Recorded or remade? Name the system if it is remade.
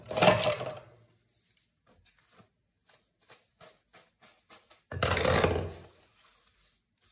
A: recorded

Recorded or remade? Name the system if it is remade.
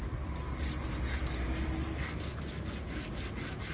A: recorded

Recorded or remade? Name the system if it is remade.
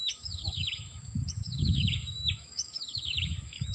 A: remade, autoencoder, DAC-VAE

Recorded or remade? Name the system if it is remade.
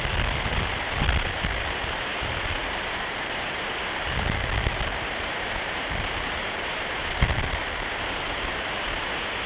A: recorded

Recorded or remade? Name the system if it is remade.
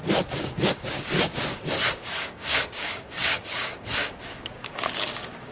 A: remade, codec, DAC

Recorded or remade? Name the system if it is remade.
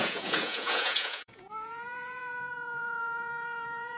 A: remade, vocoder, Vocos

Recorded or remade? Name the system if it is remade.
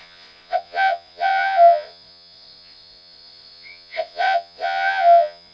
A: remade, vocoder, Vocos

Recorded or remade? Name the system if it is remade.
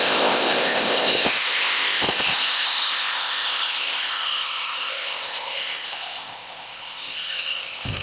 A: remade, codec, ZipCodec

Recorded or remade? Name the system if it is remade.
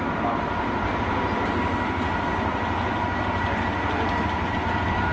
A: recorded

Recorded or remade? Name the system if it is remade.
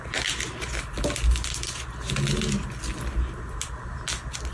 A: recorded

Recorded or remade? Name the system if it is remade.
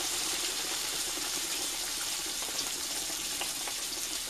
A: remade, vocoder, BigVGAN v2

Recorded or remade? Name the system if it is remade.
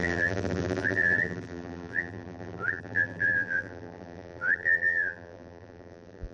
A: remade, vocoder, BigVGAN v2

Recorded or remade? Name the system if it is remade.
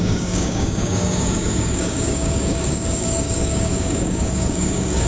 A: remade, codec, DAC